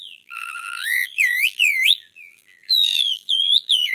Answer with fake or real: fake